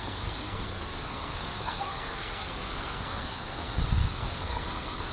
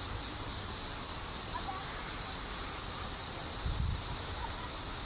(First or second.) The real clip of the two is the second